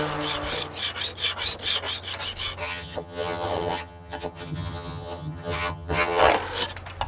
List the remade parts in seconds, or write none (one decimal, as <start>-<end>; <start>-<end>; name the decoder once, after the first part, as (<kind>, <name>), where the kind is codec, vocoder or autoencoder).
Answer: 2.6-6.3 (vocoder, HiFi-GAN)